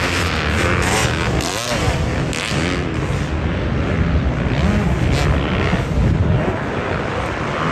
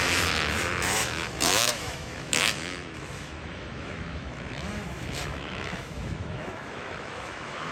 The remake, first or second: second